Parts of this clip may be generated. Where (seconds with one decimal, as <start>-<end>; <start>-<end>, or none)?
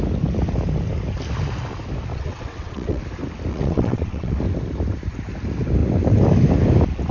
2.1-3.0; 3.5-4.4